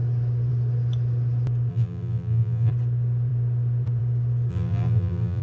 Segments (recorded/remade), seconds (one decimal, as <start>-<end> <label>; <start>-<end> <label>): 0.0-1.7 recorded; 1.7-2.7 remade; 2.7-4.5 recorded; 4.5-5.4 remade